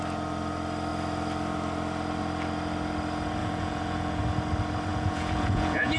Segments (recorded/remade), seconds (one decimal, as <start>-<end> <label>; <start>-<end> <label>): 0.0-3.4 recorded; 3.4-4.2 remade; 4.2-4.9 recorded; 4.9-6.0 remade